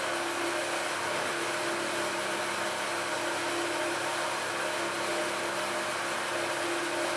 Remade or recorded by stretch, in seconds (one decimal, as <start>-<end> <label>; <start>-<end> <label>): 0.0-7.2 recorded